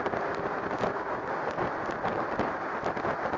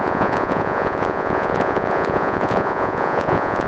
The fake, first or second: second